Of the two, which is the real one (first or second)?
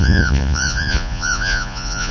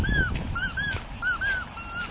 second